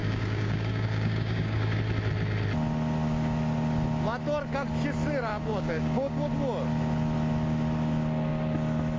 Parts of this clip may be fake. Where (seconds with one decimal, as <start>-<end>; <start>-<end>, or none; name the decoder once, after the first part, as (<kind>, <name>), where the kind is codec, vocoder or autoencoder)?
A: 0.0-1.8 (codec, DAC); 5.3-6.3